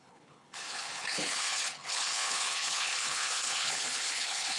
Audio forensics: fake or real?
fake